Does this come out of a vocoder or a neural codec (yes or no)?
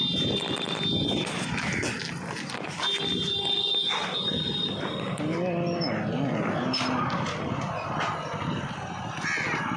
no